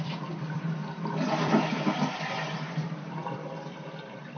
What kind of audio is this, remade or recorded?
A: remade